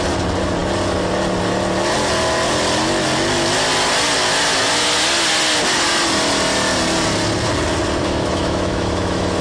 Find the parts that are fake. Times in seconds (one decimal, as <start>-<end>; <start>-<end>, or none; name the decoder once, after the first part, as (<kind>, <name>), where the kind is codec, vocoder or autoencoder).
8.0-9.4 (autoencoder, DAC-VAE)